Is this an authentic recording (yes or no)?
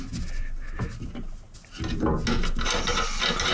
yes